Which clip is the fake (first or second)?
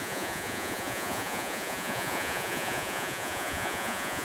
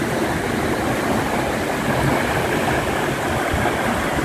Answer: first